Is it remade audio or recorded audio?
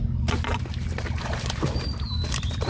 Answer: recorded